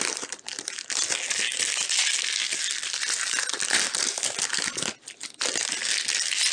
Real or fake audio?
real